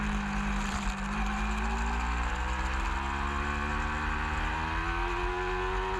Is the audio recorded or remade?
recorded